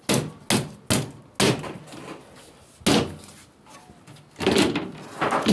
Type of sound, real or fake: real